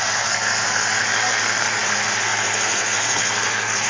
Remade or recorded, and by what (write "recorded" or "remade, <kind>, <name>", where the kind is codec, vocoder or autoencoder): remade, codec, SNAC